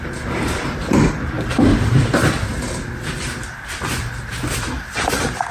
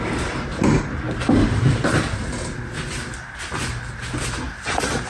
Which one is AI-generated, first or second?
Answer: first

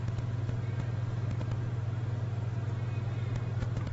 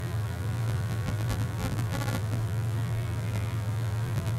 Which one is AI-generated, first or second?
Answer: second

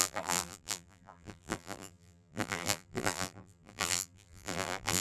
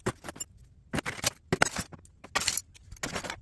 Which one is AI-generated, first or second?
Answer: first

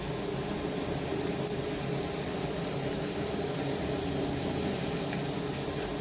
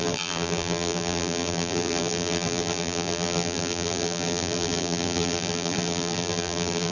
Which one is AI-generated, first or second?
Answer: second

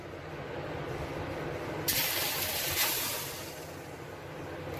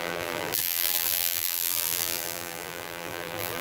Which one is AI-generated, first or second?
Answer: second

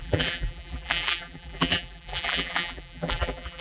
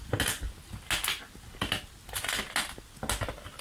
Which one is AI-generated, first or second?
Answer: first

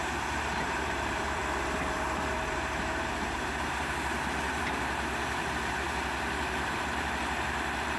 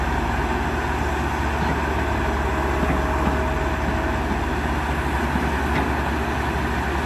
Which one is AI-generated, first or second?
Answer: first